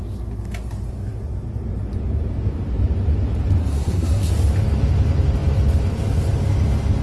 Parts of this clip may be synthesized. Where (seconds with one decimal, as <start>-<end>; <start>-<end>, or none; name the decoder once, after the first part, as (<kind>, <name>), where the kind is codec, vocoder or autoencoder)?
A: 3.6-4.3 (codec, SNAC)